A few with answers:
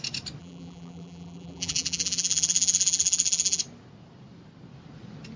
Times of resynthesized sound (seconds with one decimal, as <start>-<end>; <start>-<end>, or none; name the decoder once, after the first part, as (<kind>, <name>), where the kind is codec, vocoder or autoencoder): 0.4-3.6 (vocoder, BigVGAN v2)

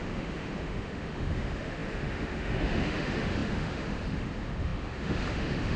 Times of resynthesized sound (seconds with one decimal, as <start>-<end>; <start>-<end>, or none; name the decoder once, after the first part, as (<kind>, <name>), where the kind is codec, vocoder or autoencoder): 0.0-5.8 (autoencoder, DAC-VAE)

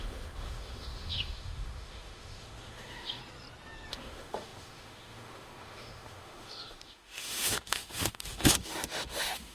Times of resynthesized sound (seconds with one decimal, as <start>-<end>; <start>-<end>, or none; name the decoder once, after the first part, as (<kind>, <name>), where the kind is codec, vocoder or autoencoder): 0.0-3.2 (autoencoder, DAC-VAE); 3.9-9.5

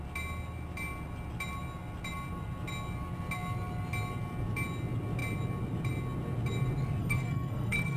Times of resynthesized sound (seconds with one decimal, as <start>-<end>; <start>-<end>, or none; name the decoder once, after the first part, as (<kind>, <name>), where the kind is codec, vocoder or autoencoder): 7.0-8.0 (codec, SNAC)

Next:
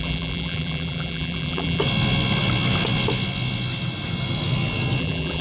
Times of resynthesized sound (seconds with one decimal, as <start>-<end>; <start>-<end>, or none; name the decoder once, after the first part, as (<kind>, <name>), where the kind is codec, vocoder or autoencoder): 0.0-1.8 (vocoder, BigVGAN v2); 5.0-5.4

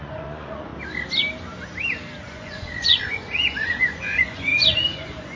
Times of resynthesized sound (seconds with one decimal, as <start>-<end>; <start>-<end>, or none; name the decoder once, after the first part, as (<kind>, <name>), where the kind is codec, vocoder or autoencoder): 0.0-0.7 (vocoder, Vocos); 2.2-5.4